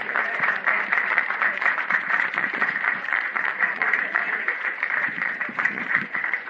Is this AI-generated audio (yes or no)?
yes